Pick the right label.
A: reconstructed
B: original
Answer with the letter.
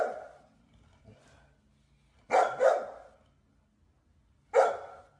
B